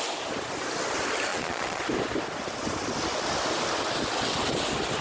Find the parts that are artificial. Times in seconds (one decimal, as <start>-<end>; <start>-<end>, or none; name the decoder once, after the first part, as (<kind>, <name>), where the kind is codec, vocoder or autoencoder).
1.3-1.8 (vocoder, Vocos)